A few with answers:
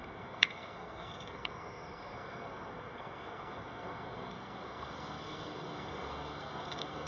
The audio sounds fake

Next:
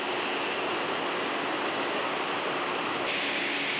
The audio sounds real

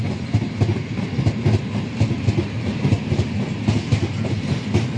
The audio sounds real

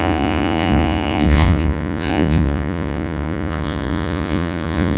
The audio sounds fake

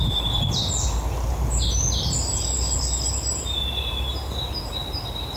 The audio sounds real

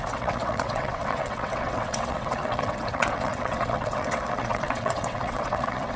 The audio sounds fake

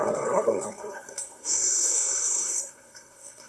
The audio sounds fake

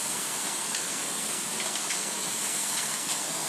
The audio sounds fake